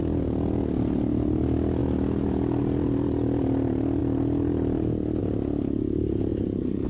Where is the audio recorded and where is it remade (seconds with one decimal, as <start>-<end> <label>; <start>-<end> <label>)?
0.0-6.3 recorded; 6.3-6.9 remade